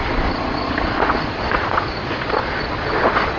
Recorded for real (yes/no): no